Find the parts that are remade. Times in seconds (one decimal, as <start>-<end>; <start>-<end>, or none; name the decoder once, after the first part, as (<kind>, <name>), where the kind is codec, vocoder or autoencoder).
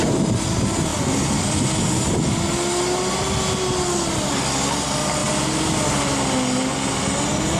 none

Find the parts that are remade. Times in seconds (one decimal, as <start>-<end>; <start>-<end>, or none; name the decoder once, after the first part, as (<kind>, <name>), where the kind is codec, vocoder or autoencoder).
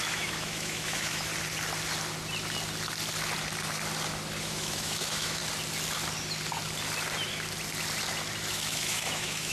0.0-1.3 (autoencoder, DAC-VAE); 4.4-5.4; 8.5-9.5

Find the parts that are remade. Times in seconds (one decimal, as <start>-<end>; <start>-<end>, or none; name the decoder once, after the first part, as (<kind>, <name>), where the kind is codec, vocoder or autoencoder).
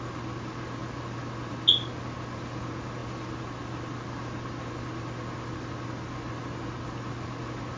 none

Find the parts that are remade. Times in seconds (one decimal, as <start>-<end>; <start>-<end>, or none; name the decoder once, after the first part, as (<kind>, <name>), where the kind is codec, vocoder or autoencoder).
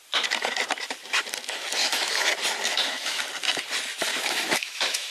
1.8-2.3 (autoencoder, DAC-VAE); 2.7-3.2; 4.1-5.1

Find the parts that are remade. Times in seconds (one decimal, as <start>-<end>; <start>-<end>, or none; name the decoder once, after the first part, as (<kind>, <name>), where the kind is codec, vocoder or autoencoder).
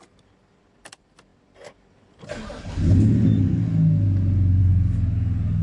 none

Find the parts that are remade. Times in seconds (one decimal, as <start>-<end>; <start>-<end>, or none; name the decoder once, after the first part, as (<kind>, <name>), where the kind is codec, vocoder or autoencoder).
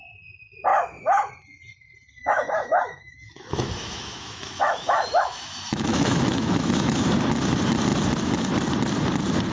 0.7-1.3 (autoencoder, DAC-VAE); 2.2-7.1